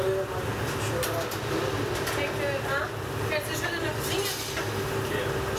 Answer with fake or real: real